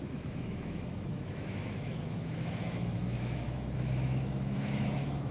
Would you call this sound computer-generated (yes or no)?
yes